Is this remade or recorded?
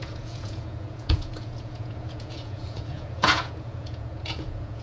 remade